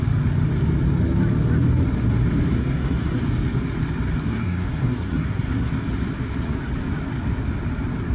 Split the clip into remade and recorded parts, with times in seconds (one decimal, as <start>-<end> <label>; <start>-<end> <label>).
0.0-2.5 recorded; 2.5-3.2 remade; 3.2-4.3 recorded; 4.3-5.7 remade; 5.7-8.1 recorded